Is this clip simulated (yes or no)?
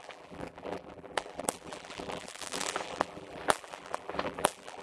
yes